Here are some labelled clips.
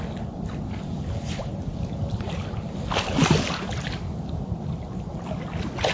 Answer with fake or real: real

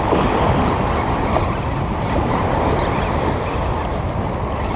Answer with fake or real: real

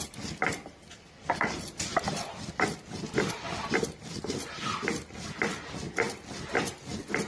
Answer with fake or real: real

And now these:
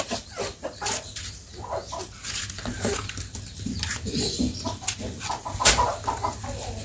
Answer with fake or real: real